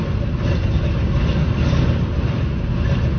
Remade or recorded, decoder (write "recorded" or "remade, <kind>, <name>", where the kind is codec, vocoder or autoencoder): recorded